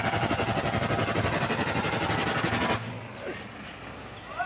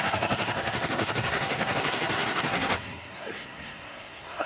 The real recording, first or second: first